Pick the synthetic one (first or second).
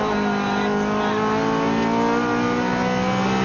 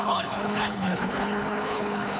second